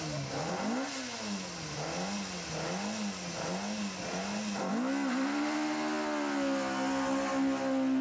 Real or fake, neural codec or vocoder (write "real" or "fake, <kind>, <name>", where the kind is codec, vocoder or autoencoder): real